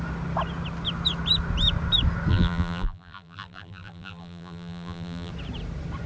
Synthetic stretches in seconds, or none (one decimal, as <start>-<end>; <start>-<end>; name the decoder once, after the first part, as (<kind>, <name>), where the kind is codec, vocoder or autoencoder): 2.3-5.3 (vocoder, BigVGAN v2)